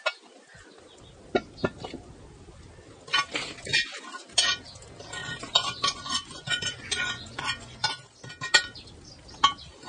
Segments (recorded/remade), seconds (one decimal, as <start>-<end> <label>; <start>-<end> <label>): 0.0-5.2 recorded; 5.2-7.9 remade; 7.9-9.9 recorded